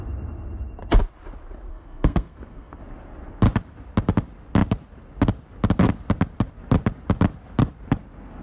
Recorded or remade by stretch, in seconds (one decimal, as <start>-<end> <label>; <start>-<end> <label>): 0.0-1.7 recorded; 1.7-2.8 remade; 2.8-8.4 recorded